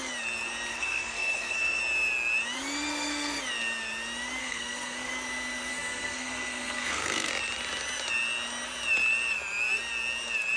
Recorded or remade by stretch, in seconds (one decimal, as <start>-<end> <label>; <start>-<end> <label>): 0.0-0.7 recorded; 0.7-1.8 remade; 1.8-2.9 recorded; 2.9-3.4 remade; 3.4-4.4 recorded; 4.4-5.1 remade; 5.1-5.7 recorded; 5.7-7.3 remade; 7.3-10.6 recorded